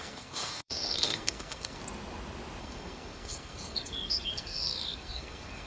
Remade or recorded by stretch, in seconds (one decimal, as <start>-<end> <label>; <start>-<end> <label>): 0.0-1.8 remade; 1.8-2.6 recorded; 2.6-5.7 remade